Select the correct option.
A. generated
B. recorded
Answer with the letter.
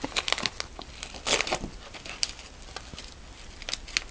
B